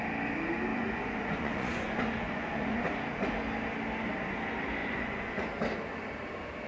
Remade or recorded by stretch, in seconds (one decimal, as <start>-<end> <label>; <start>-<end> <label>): 0.0-0.7 recorded; 0.7-2.8 remade; 2.8-4.8 recorded; 4.8-5.4 remade; 5.4-6.7 recorded